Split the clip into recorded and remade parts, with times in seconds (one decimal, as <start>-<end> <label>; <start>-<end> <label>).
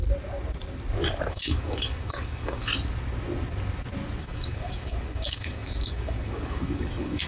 0.0-1.3 recorded; 1.3-2.7 remade; 2.7-4.2 recorded; 4.2-7.3 remade